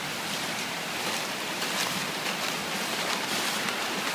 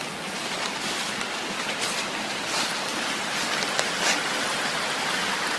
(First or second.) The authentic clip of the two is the second